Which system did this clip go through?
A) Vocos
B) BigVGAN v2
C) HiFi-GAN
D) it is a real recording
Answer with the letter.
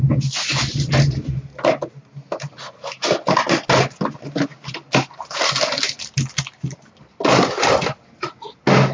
D